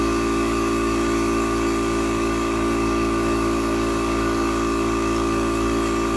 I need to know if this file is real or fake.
fake